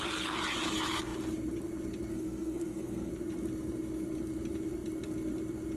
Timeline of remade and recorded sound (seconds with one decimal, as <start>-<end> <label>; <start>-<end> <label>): 0.0-2.1 recorded; 2.1-3.1 remade; 3.1-5.8 recorded